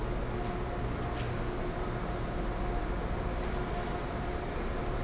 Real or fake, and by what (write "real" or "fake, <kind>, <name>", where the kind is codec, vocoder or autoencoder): real